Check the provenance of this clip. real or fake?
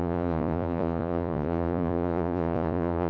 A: fake